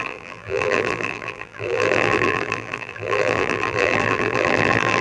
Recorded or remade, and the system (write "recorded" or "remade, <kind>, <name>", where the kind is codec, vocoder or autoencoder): remade, vocoder, BigVGAN v2